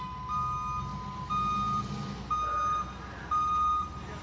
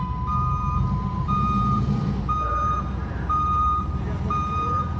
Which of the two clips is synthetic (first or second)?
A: second